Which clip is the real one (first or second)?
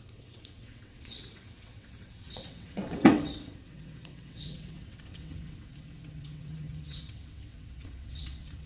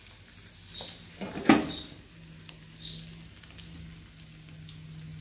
second